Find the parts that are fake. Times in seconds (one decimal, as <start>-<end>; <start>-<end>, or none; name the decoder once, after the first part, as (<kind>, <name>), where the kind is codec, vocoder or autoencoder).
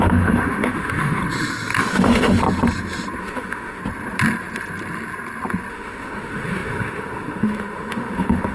0.0-1.2 (autoencoder, DAC-VAE); 1.8-2.4; 3.2-3.8; 5.7-8.5